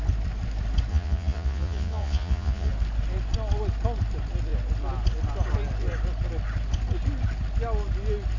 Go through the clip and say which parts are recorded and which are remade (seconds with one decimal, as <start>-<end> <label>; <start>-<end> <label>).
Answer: 0.0-0.9 recorded; 0.9-2.7 remade; 2.7-8.4 recorded